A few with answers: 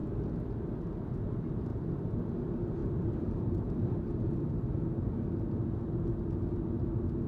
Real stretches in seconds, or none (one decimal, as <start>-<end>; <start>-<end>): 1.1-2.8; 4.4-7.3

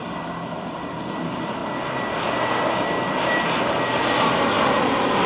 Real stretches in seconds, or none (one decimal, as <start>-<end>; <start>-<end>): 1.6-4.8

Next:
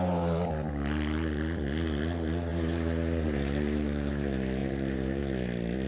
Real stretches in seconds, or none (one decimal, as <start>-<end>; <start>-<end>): 0.0-2.5; 4.1-4.6; 5.2-5.9

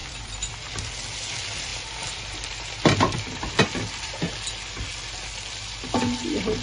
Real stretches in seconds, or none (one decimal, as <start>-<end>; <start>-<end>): 0.5-1.7; 3.7-6.6

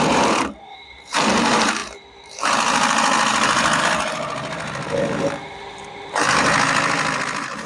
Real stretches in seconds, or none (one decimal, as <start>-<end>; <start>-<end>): none

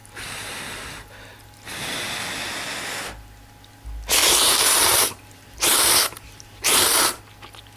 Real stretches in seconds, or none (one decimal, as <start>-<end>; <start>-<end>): 1.3-4.2; 7.2-7.8